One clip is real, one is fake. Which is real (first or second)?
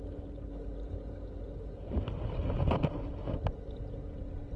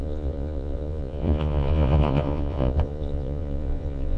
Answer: first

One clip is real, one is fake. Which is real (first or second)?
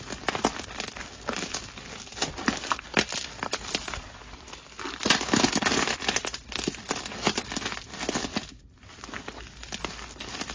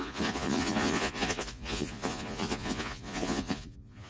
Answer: first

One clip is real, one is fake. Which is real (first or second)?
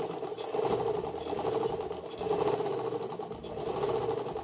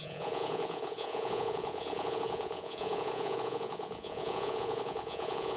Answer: first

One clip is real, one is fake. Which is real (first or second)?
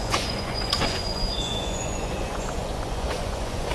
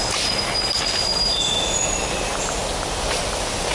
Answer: second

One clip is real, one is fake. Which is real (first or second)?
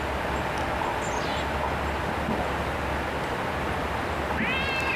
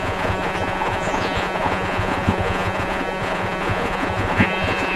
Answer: first